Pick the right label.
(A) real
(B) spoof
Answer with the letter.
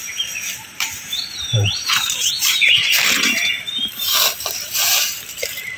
B